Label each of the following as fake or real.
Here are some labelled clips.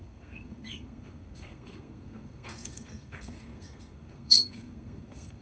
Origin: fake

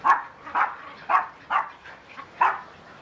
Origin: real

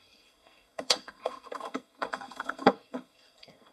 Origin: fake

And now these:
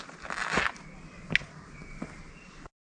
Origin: real